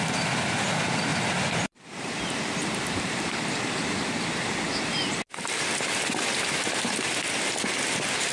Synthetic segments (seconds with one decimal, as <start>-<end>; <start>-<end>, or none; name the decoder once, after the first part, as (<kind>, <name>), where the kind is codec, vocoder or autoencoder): 1.1-3.5 (vocoder, BigVGAN v2)